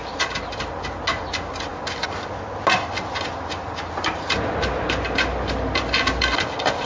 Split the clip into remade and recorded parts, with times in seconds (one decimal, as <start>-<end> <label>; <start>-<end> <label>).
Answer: 0.0-6.8 recorded